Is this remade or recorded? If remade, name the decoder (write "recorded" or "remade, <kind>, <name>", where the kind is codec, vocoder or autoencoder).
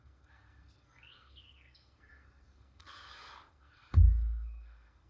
remade, codec, SNAC